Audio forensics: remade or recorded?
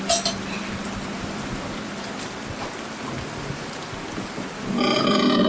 recorded